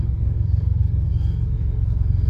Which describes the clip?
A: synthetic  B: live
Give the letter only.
A